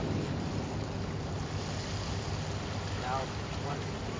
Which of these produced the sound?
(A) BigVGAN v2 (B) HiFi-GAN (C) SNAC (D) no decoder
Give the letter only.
D